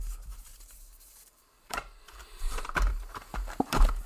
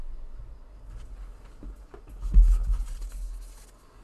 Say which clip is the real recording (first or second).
second